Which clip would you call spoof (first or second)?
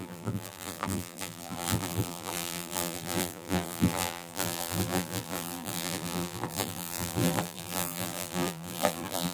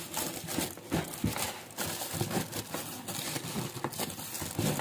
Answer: first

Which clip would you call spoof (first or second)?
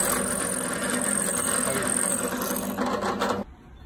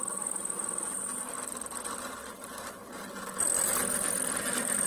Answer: second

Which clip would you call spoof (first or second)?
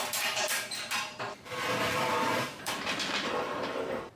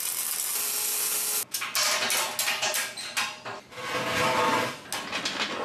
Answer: first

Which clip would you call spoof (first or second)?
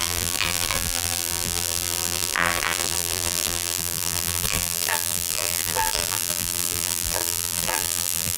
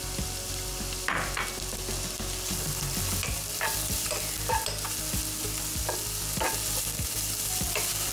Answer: first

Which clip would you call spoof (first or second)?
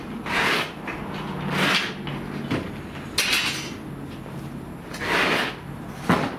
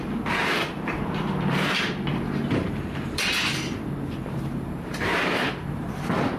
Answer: second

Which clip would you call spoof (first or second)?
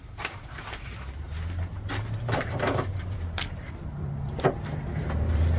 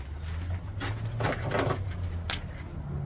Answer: first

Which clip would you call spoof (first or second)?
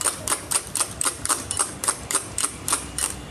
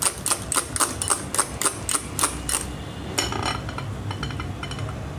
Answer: first